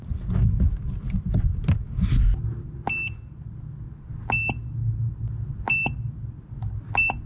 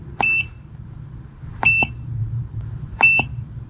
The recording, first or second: first